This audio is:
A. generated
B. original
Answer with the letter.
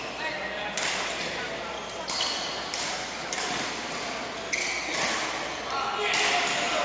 B